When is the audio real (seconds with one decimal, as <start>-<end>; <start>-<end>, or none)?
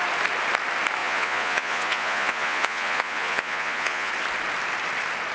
0.0-1.0; 4.1-5.3